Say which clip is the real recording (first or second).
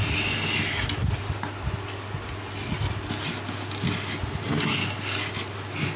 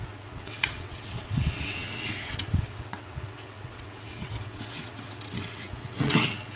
first